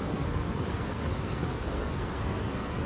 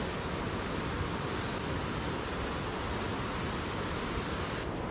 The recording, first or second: second